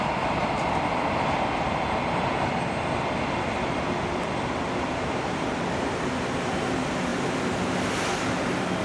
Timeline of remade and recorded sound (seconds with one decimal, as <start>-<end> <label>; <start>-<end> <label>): 0.0-8.8 recorded